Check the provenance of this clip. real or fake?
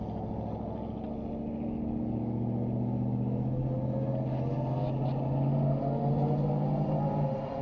real